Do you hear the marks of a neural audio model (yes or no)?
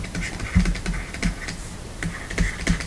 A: no